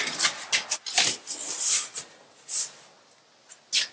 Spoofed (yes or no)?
no